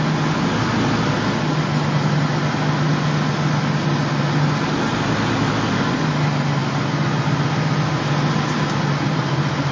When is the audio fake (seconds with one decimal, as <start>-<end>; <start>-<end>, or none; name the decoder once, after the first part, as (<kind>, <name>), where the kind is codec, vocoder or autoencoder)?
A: none